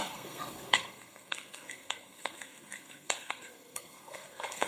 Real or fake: fake